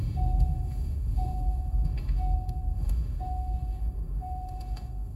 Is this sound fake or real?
fake